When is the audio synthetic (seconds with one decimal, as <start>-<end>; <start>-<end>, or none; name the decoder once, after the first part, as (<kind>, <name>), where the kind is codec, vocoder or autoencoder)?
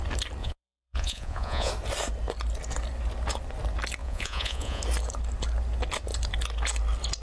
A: 0.4-1.7 (vocoder, Vocos); 4.0-4.8